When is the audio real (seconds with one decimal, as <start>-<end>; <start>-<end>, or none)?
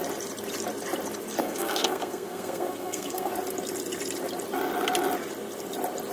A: 0.0-1.4; 3.3-6.1